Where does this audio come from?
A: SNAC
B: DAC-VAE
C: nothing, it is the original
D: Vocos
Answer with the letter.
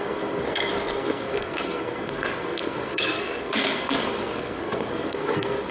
A